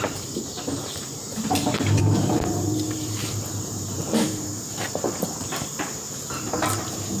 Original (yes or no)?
no